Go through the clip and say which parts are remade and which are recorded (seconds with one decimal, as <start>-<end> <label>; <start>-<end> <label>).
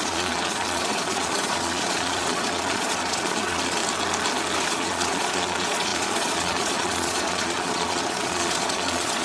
0.0-3.8 remade; 3.8-4.6 recorded; 4.6-9.2 remade